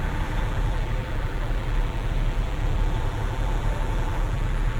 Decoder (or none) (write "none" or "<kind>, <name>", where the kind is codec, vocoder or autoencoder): vocoder, BigVGAN v2